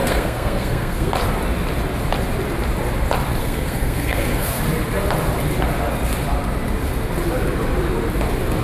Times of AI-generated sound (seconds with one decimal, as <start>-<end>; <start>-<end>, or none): 0.0-1.1; 3.4-4.6